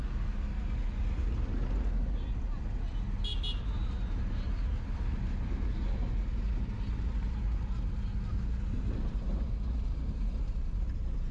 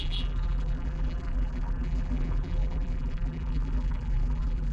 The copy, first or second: second